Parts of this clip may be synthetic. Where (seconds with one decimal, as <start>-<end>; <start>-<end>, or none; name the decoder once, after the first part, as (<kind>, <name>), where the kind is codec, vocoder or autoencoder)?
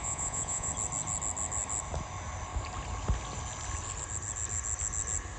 0.0-0.7 (vocoder, Vocos)